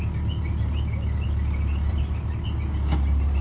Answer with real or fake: real